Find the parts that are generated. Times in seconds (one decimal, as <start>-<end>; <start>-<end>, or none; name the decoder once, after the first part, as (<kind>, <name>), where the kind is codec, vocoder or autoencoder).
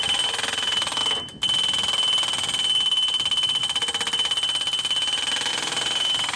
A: 5.5-6.4 (vocoder, BigVGAN v2)